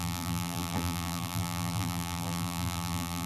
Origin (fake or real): fake